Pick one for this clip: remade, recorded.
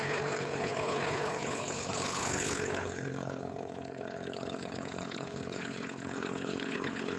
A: remade